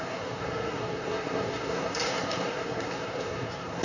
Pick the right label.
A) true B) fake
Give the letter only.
B